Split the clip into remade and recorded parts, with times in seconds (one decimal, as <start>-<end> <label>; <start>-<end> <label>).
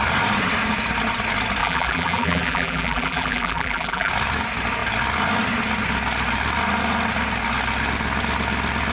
0.0-1.6 recorded; 1.6-4.1 remade; 4.1-8.9 recorded